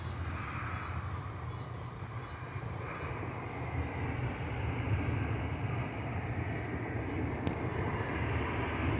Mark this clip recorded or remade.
recorded